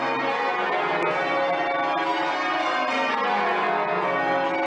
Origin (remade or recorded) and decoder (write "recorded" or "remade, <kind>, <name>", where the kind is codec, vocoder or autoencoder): recorded